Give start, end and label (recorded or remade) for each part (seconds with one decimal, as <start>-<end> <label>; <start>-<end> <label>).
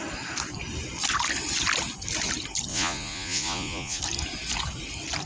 0.0-2.7 recorded; 2.7-4.0 remade; 4.0-5.3 recorded